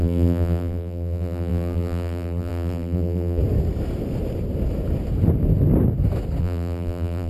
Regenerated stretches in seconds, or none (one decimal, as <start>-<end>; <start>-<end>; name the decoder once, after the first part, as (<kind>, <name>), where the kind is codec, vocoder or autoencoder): 0.0-3.4 (vocoder, BigVGAN v2); 6.4-7.3